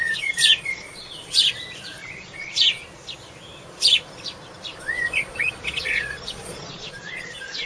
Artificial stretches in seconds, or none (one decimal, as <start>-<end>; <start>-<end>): 0.0-1.4; 2.0-2.8; 4.8-7.7